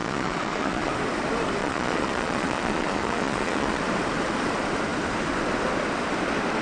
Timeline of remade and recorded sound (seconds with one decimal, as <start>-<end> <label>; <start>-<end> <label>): 0.0-0.9 remade; 0.9-1.6 recorded; 1.6-3.8 remade; 3.8-6.6 recorded

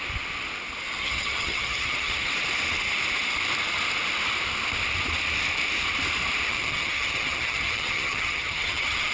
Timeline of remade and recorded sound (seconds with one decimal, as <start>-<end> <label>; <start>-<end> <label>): 0.0-1.0 recorded; 1.0-2.3 remade; 2.3-6.4 recorded; 6.4-9.1 remade

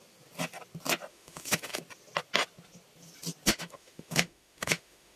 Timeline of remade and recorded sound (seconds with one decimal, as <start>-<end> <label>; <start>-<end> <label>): 0.0-1.1 recorded; 1.1-1.8 remade; 1.8-3.5 recorded; 3.5-5.2 remade

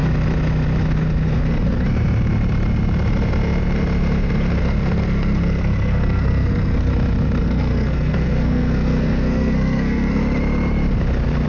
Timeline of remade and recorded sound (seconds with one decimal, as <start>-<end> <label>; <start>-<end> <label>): 0.0-4.6 recorded; 4.6-6.9 remade; 6.9-7.4 recorded; 7.4-10.2 remade; 10.2-11.5 recorded